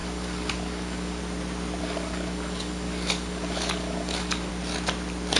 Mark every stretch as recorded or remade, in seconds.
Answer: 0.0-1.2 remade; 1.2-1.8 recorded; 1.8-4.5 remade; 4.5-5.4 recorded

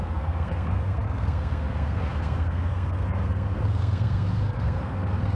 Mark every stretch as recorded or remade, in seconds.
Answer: 0.0-5.4 remade